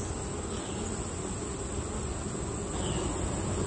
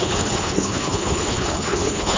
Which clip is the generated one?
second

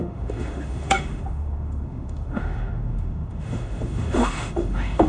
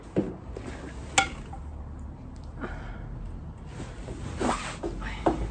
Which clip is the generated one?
first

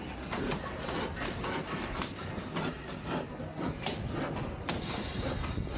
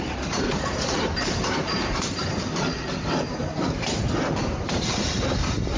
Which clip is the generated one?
second